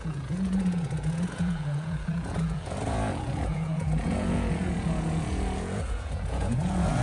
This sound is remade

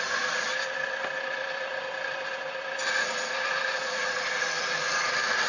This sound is recorded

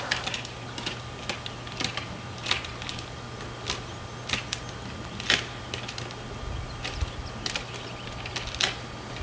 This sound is recorded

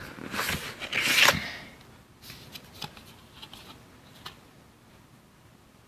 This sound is recorded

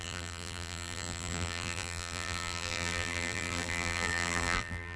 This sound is remade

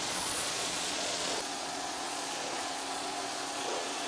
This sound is remade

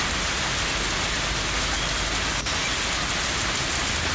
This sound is recorded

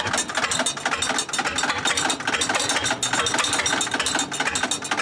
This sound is recorded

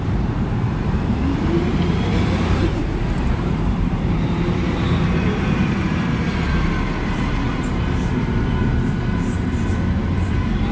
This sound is remade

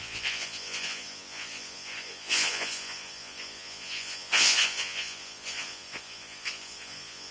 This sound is remade